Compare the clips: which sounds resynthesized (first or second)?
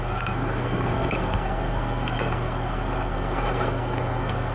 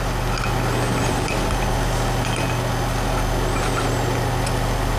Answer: first